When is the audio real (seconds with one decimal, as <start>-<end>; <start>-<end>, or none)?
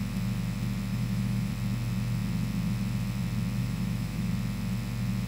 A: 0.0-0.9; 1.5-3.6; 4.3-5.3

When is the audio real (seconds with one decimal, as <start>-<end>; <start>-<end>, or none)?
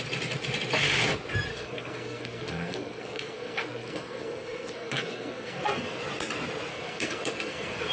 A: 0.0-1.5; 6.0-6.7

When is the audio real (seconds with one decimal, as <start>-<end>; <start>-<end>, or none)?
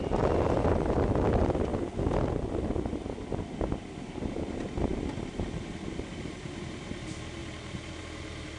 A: 0.0-8.6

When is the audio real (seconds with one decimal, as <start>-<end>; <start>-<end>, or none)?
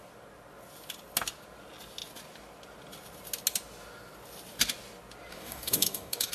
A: 0.0-5.3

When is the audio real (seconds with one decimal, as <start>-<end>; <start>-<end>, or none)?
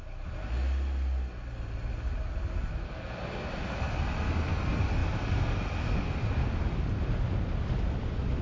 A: 0.0-8.4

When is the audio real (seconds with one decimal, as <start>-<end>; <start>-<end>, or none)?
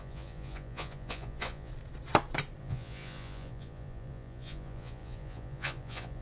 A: 1.7-2.6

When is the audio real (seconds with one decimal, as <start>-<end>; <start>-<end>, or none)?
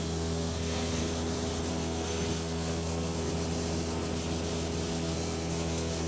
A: 1.0-1.7; 3.3-4.9